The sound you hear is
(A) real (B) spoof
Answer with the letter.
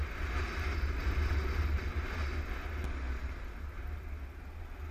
A